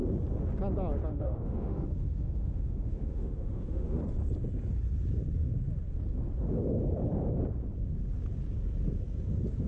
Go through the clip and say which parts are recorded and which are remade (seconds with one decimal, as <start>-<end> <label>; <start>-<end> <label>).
0.0-1.1 recorded; 1.1-4.0 remade; 4.0-9.7 recorded